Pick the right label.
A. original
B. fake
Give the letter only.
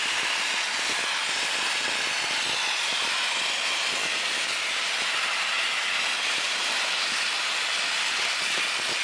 A